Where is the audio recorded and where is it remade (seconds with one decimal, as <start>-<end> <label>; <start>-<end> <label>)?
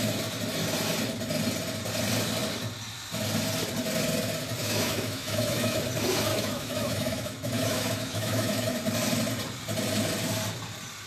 0.0-4.6 recorded; 4.6-5.8 remade; 5.8-6.3 recorded; 6.3-8.7 remade; 8.7-11.1 recorded